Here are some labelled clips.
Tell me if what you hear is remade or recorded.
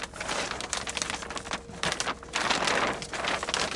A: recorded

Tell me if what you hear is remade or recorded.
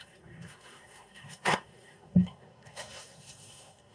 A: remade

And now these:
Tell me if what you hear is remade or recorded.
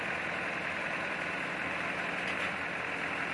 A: recorded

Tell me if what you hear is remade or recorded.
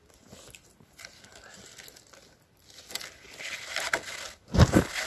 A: recorded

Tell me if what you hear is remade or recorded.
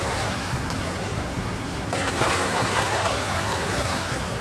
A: remade